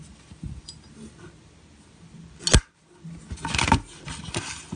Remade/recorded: recorded